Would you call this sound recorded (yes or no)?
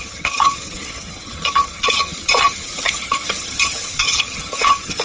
no